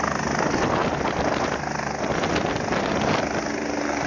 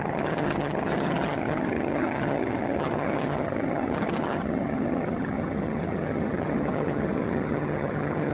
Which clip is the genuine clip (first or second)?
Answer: first